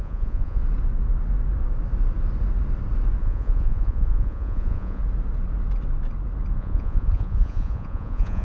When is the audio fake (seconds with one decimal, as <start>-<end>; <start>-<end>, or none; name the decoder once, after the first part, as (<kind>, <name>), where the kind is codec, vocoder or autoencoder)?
0.0-0.6 (vocoder, Vocos); 3.2-5.0; 6.6-8.4